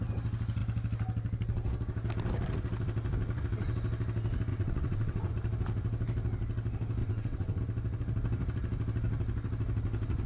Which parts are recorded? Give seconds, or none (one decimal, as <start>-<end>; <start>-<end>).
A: 0.0-4.5; 5.3-7.0; 7.6-10.3